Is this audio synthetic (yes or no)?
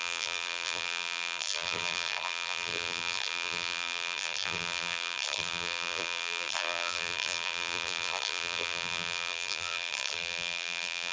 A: yes